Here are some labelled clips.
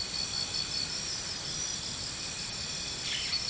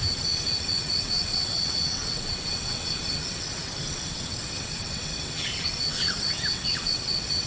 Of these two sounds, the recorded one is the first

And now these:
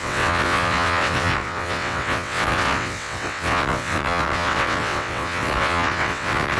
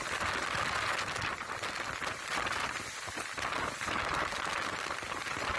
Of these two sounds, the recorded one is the second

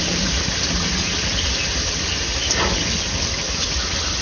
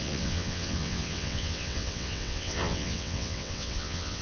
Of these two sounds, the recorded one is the first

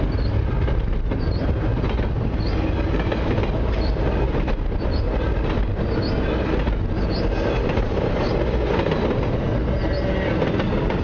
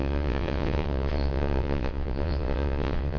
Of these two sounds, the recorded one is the first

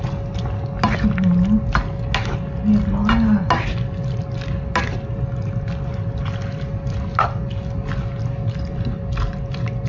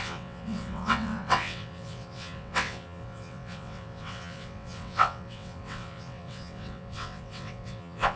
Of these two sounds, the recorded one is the first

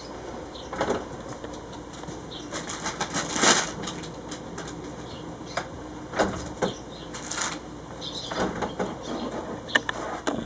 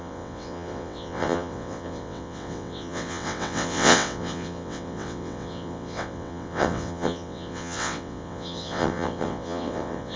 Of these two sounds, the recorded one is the first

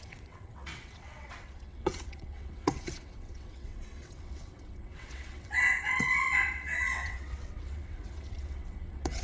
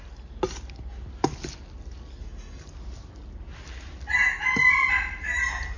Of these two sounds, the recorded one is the second